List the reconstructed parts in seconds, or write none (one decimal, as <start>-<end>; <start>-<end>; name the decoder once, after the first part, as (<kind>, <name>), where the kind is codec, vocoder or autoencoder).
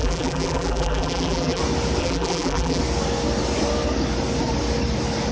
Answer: 0.0-1.6 (vocoder, BigVGAN v2); 2.0-2.8